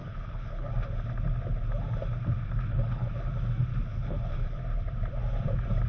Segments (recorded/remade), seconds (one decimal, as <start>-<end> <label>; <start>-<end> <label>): 0.0-0.7 remade; 0.7-2.7 recorded; 2.7-3.3 remade; 3.3-3.9 recorded; 3.9-4.6 remade; 4.6-5.9 recorded

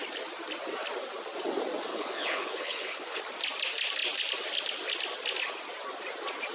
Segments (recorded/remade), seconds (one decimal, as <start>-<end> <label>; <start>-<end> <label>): 0.0-1.9 recorded; 1.9-3.2 remade; 3.2-6.5 recorded

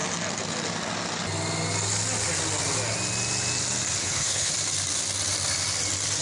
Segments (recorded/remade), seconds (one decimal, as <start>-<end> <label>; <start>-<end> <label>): 0.0-4.0 recorded; 4.0-4.5 remade; 4.5-6.2 recorded

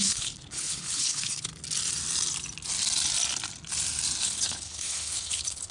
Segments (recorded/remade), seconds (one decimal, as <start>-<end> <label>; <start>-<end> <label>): 0.0-1.5 remade; 1.5-4.2 recorded; 4.2-5.7 remade

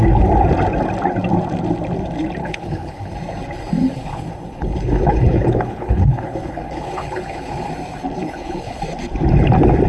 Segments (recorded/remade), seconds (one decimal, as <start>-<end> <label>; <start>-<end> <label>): 0.0-2.4 recorded; 2.4-3.1 remade; 3.1-3.8 recorded; 3.8-7.7 remade; 7.7-8.2 recorded; 8.2-8.8 remade; 8.8-9.9 recorded

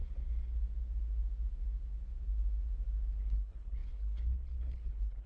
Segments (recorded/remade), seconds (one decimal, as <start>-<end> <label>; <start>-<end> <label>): 0.0-3.2 recorded; 3.2-5.3 remade